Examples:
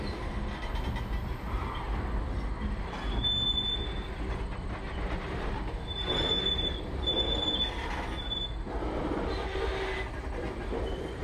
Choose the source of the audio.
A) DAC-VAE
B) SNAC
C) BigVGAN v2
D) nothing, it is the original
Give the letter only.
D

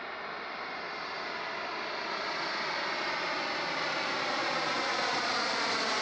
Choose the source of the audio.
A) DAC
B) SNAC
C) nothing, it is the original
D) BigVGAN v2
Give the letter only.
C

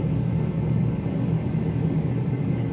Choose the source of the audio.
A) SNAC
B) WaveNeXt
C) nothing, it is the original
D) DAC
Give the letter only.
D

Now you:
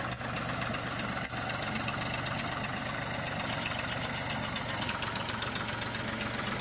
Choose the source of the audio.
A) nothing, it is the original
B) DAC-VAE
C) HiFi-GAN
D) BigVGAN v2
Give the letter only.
A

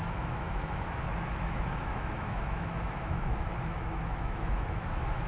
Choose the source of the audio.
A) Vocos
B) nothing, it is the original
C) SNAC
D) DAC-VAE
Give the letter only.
D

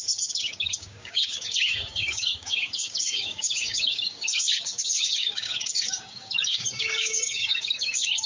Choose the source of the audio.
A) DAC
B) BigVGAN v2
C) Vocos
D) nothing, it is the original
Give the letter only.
A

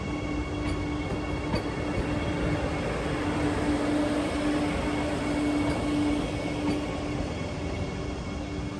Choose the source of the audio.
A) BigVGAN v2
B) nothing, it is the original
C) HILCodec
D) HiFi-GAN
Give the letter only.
B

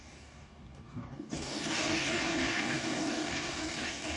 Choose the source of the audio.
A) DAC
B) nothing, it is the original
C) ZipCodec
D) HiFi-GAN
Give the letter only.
A